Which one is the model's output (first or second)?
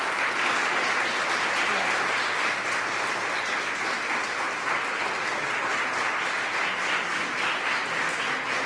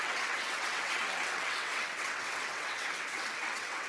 second